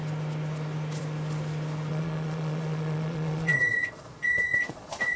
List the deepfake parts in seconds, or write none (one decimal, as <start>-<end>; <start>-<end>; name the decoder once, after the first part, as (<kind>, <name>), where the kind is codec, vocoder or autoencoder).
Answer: 1.9-5.2 (vocoder, Vocos)